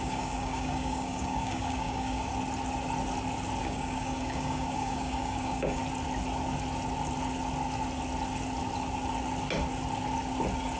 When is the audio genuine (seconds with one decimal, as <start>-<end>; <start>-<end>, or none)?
2.3-3.6; 5.8-10.8